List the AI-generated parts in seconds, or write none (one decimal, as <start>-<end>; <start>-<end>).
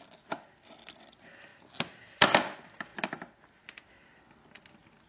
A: 1.5-2.2